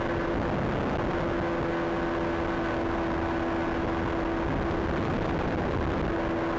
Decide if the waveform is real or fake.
real